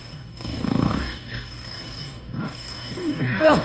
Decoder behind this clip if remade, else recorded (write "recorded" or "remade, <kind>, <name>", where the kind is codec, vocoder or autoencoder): remade, codec, DAC